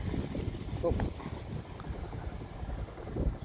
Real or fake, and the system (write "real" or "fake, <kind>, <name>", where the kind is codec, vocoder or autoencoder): real